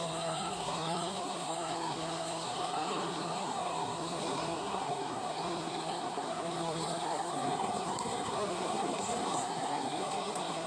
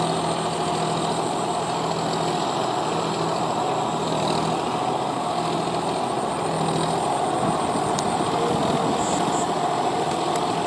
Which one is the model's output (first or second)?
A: first